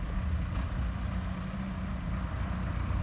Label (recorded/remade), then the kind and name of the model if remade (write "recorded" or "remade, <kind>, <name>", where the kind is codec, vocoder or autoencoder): recorded